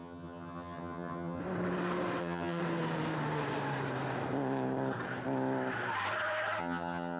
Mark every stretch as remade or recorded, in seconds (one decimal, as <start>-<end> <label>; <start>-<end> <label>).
0.0-1.4 remade; 1.4-2.2 recorded; 2.2-2.6 remade; 2.6-6.6 recorded; 6.6-7.2 remade